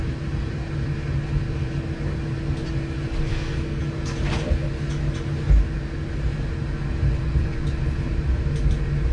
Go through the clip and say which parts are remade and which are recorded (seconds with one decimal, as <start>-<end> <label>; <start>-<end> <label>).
0.0-3.3 recorded; 3.3-3.8 remade; 3.8-9.1 recorded